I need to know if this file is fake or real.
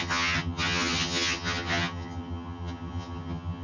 fake